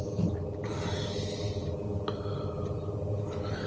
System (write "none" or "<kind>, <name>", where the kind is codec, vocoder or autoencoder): none